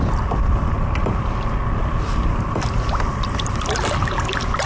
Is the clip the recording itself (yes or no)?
yes